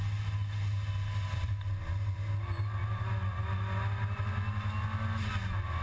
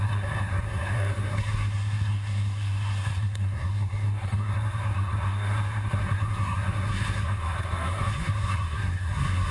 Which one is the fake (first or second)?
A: second